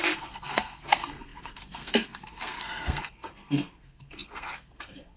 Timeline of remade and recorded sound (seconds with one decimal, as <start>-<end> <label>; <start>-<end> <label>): 0.0-5.2 remade